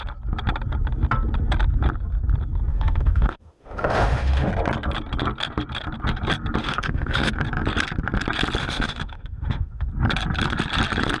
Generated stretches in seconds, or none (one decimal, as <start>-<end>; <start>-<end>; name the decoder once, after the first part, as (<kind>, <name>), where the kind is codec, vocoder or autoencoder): 2.7-4.5 (autoencoder, DAC-VAE); 6.6-7.3; 8.6-9.9